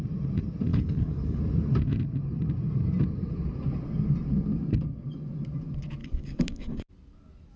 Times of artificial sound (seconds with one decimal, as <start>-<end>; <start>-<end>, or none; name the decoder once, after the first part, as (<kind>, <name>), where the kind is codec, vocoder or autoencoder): 0.7-1.4 (codec, DAC); 6.0-6.9